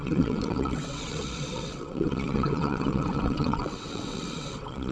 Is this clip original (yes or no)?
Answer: no